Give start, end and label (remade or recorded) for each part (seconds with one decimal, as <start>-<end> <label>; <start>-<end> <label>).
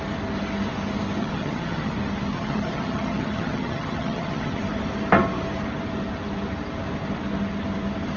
0.0-1.2 recorded; 1.2-1.9 remade; 1.9-2.3 recorded; 2.3-4.6 remade; 4.6-8.2 recorded